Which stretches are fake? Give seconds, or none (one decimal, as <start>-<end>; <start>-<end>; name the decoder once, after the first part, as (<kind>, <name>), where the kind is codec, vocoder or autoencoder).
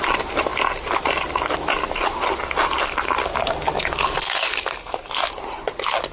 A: none